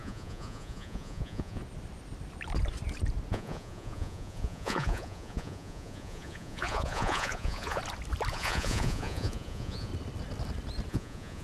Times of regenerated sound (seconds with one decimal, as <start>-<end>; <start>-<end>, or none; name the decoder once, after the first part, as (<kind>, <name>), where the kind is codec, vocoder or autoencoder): 0.0-1.6 (vocoder, Vocos); 3.3-7.8; 8.3-9.9; 10.9-11.4